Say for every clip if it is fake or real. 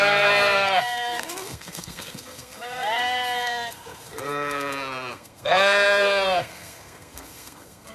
fake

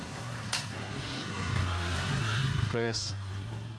fake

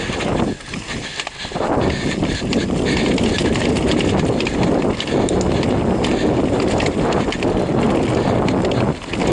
real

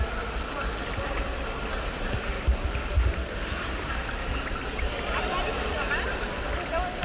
real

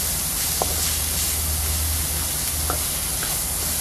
real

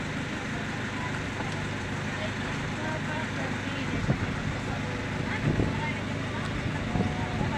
real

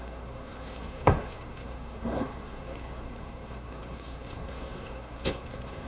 fake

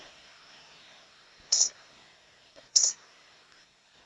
fake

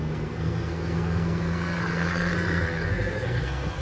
fake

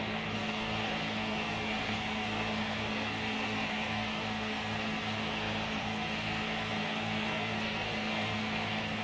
fake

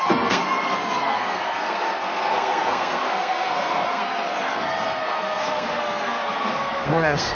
fake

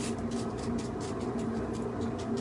real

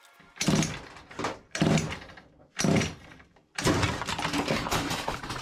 real